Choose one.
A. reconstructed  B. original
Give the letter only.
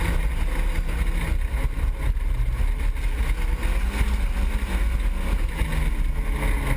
B